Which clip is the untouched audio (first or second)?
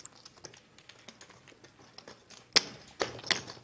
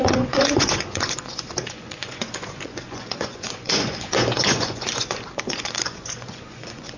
first